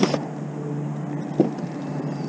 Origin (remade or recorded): recorded